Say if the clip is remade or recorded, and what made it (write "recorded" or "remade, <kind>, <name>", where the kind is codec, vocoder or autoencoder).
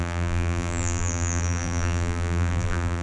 remade, vocoder, BigVGAN v2